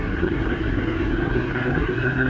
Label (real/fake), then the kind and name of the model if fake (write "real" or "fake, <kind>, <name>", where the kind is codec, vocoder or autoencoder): fake, codec, SNAC